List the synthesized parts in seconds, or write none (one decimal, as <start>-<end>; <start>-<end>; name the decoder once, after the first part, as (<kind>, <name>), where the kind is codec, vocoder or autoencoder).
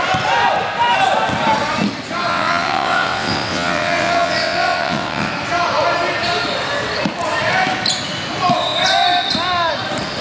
2.3-5.3 (vocoder, WaveNeXt)